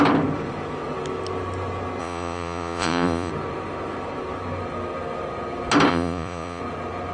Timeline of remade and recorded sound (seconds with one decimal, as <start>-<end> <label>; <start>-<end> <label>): 0.0-2.0 recorded; 2.0-3.3 remade; 3.3-5.9 recorded; 5.9-6.6 remade; 6.6-7.1 recorded